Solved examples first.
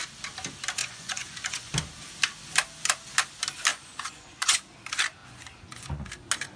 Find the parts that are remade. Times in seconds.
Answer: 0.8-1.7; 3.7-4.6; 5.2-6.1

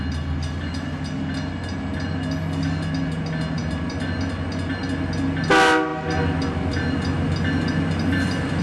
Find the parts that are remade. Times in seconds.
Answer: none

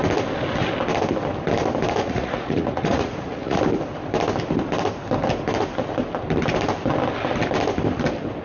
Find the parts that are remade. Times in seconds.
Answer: 2.0-3.6